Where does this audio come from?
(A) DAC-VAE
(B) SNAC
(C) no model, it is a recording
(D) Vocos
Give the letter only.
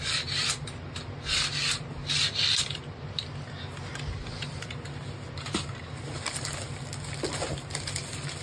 C